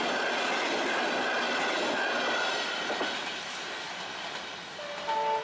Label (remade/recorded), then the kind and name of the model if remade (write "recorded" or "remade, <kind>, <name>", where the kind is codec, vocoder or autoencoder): recorded